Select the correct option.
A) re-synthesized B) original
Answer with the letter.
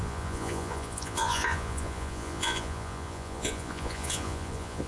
A